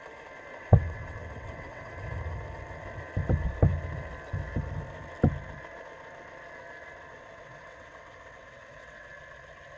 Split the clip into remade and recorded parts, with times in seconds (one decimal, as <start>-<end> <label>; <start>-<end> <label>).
0.0-0.5 recorded; 0.5-1.9 remade; 1.9-7.1 recorded; 7.1-9.1 remade; 9.1-9.8 recorded